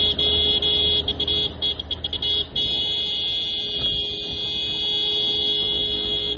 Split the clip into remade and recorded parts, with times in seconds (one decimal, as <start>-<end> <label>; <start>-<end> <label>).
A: 0.0-5.4 recorded; 5.4-6.4 remade